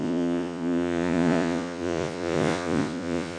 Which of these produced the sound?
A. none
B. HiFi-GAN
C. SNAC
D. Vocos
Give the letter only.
D